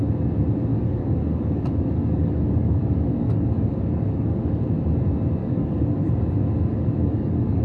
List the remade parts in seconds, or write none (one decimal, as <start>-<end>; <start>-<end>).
0.7-4.6; 5.4-6.1; 6.7-7.6